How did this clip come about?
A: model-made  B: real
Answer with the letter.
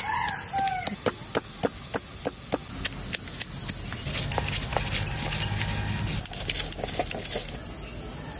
B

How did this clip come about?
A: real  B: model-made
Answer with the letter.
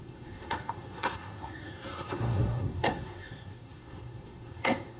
B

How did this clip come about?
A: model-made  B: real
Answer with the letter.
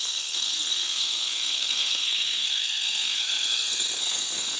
A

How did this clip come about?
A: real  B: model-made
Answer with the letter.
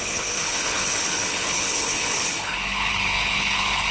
B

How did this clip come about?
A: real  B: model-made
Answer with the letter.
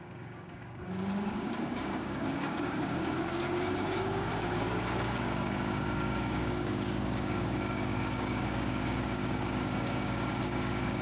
B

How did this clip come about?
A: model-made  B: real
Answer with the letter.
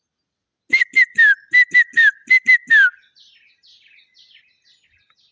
B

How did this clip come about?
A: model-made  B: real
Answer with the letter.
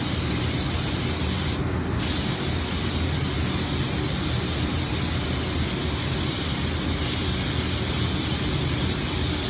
B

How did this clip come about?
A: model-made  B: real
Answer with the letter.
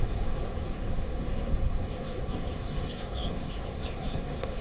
A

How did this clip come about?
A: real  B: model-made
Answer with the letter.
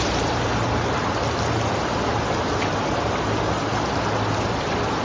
A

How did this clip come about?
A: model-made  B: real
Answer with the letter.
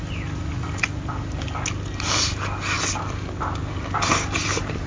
B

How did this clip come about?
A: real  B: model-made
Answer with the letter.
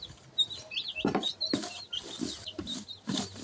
A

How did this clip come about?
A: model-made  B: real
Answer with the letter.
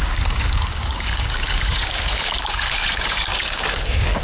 A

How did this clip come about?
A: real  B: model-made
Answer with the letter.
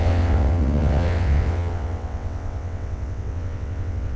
B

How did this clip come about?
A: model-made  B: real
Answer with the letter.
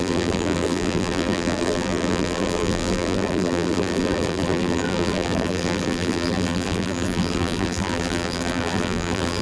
A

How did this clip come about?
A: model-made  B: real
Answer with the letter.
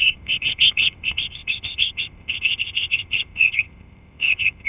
A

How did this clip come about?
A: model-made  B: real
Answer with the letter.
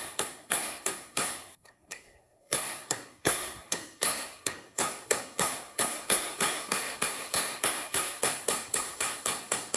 A